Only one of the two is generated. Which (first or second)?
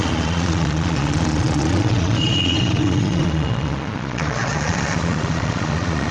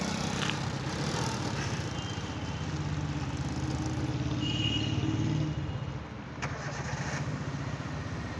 first